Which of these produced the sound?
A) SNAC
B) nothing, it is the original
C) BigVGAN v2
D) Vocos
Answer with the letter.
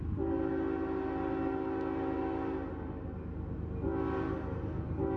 B